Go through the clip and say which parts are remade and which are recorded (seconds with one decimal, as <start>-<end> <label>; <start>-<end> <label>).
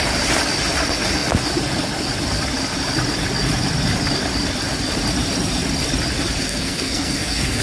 0.0-6.4 recorded; 6.4-7.6 remade